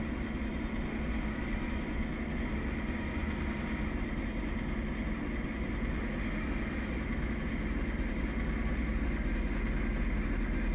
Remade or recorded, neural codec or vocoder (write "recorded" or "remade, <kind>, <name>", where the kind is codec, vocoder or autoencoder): recorded